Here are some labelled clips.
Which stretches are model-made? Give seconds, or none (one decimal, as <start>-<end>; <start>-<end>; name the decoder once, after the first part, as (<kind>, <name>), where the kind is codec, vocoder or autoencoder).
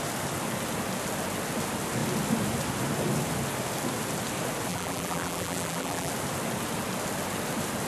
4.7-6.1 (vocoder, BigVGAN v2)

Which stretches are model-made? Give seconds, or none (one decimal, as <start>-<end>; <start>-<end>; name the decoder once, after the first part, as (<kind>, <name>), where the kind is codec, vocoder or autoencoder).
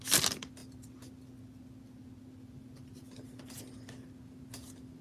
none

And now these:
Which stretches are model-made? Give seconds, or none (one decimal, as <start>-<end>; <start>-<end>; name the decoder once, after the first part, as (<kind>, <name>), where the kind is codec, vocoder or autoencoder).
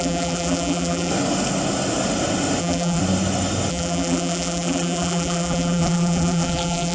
0.0-1.1 (vocoder, BigVGAN v2); 2.6-3.0; 3.7-6.9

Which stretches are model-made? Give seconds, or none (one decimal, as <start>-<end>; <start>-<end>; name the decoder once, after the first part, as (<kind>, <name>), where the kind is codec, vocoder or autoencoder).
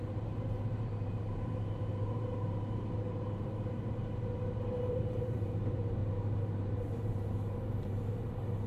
0.0-8.7 (vocoder, BigVGAN v2)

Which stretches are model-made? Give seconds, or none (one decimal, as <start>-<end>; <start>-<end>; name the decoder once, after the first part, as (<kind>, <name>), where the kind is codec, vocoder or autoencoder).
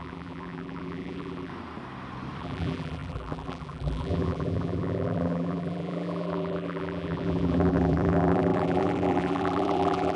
0.0-1.5 (vocoder, BigVGAN v2); 2.4-10.2